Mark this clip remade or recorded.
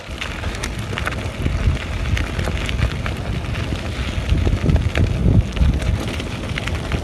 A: recorded